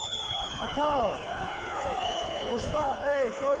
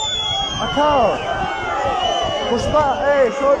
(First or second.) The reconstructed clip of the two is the first